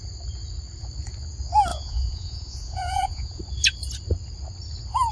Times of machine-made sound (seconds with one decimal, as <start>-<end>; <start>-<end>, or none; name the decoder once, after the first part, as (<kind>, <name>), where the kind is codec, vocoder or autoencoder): 1.7-3.4 (vocoder, Vocos)